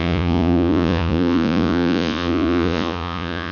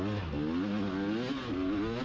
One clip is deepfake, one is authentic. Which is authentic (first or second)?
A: second